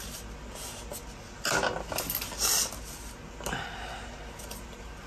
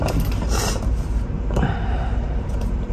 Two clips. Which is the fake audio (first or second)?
second